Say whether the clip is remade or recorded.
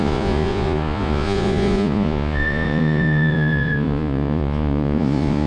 remade